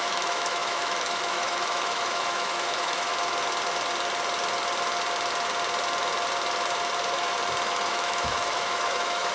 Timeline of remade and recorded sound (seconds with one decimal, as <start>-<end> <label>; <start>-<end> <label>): 0.0-3.1 remade; 3.1-7.9 recorded; 7.9-9.3 remade